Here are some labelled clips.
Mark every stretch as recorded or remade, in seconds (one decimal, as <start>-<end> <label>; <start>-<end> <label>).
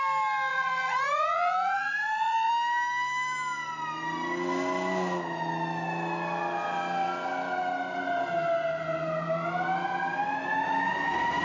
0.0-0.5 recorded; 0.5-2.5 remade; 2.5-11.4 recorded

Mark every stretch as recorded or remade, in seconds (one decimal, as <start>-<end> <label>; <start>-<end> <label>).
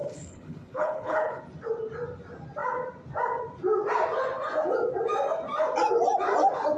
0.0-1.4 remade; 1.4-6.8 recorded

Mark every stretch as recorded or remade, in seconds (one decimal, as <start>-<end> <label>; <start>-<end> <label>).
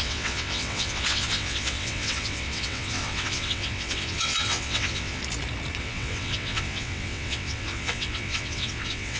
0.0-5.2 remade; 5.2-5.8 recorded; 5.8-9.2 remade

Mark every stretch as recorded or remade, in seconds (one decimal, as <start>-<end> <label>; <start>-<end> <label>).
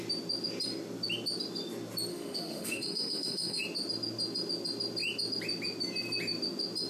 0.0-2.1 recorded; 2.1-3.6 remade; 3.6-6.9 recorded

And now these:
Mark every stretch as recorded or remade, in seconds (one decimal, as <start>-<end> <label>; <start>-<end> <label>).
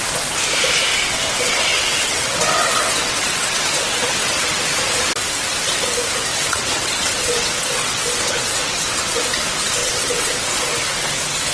0.0-0.9 recorded; 0.9-4.8 remade; 4.8-6.3 recorded; 6.3-9.2 remade; 9.2-9.8 recorded; 9.8-10.4 remade; 10.4-11.5 recorded